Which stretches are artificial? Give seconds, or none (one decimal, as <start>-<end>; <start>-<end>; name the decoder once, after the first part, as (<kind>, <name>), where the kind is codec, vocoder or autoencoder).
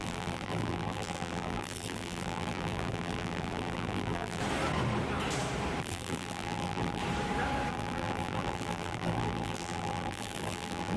0.0-4.4 (vocoder, BigVGAN v2); 5.8-7.0; 7.7-11.0